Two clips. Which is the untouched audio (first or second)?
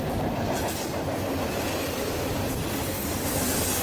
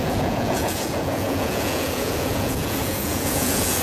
first